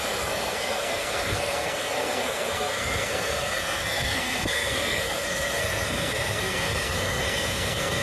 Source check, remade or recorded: remade